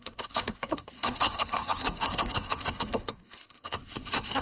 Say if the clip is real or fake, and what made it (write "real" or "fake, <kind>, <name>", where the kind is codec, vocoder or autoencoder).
fake, codec, SNAC